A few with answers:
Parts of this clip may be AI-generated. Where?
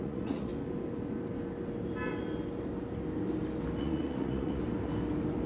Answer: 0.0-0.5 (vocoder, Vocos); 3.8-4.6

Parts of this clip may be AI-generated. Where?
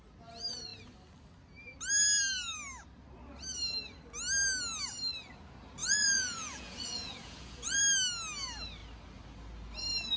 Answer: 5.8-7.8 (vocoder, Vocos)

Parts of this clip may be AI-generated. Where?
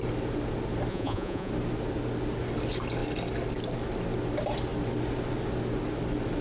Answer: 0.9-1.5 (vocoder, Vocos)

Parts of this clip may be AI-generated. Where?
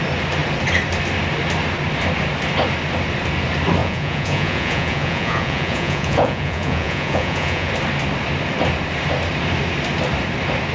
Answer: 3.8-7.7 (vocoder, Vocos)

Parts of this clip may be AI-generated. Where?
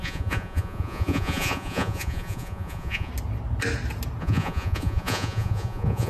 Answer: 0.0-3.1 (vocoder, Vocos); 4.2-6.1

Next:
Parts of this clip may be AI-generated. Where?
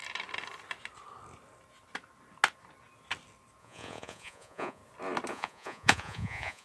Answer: 3.6-4.8 (vocoder, Vocos); 5.3-6.6